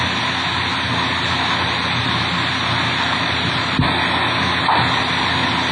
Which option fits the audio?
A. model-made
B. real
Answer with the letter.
B